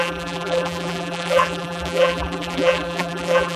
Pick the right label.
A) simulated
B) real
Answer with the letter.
A